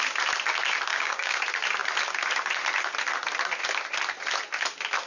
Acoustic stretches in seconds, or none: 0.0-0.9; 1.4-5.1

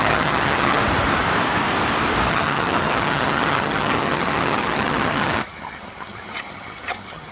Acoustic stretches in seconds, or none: 0.8-2.3